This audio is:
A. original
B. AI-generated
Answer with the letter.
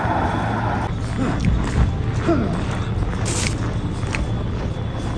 A